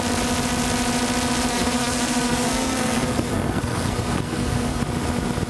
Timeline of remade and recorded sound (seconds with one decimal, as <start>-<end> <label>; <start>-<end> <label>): 0.0-1.5 recorded; 1.5-4.8 remade; 4.8-5.5 recorded